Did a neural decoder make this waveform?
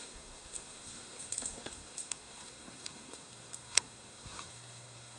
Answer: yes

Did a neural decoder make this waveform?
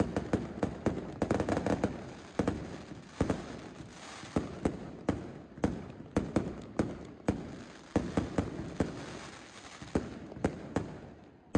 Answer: no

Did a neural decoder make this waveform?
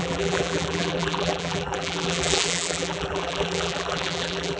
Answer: yes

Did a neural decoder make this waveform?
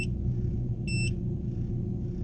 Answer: no